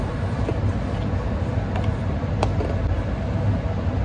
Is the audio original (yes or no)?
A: yes